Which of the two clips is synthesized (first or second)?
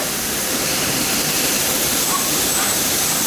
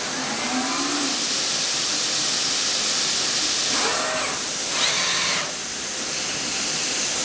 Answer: first